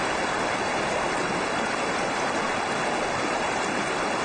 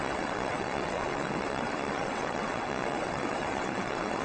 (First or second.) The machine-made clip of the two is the second